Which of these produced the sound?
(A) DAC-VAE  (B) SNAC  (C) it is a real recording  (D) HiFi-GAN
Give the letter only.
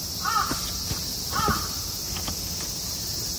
C